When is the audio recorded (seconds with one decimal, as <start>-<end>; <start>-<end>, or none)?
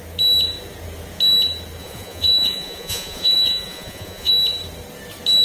0.0-1.8; 4.3-5.4